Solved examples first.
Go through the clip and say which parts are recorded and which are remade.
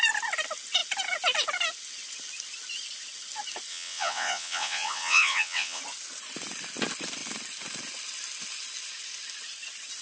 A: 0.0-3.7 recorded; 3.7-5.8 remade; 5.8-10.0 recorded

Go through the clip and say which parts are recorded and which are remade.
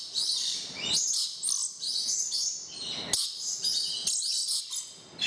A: 0.0-5.3 recorded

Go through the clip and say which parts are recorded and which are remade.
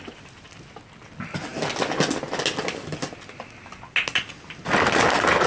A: 0.0-5.5 recorded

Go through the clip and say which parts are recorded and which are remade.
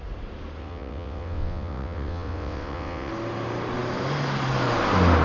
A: 0.0-0.6 recorded; 0.6-3.1 remade; 3.1-5.2 recorded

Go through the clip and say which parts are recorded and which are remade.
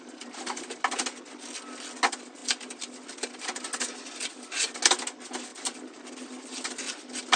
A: 0.0-7.4 recorded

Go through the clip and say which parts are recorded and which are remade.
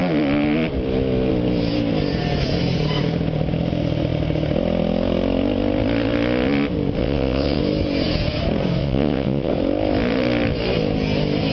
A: 0.0-7.0 recorded; 7.0-7.6 remade; 7.6-8.8 recorded; 8.8-9.5 remade; 9.5-11.5 recorded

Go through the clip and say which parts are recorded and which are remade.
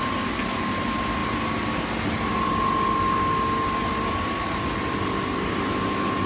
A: 0.0-6.3 recorded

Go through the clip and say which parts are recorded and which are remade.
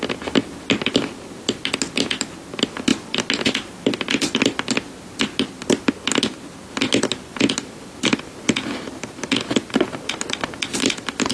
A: 0.0-11.3 recorded